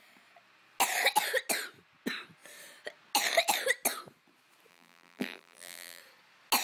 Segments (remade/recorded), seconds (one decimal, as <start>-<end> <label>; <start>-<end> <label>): 0.0-4.7 recorded; 4.7-6.0 remade; 6.0-6.6 recorded